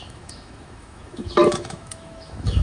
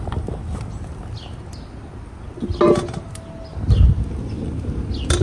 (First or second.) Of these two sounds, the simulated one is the first